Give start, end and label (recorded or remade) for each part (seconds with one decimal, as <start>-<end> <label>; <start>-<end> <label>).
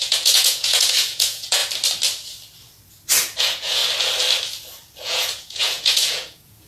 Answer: 0.0-1.6 remade; 1.6-3.4 recorded; 3.4-3.8 remade; 3.8-5.0 recorded; 5.0-6.7 remade